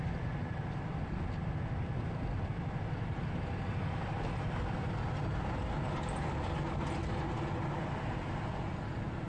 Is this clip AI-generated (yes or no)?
no